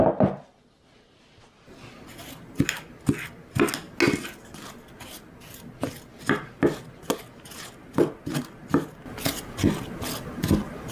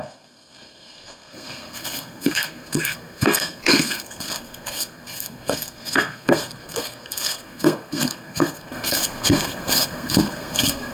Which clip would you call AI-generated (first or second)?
second